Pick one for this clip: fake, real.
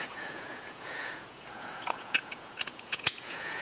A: fake